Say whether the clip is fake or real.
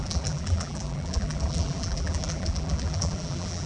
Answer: fake